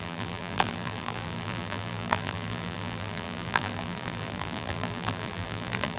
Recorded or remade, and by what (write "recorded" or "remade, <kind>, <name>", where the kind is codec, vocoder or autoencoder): remade, vocoder, BigVGAN v2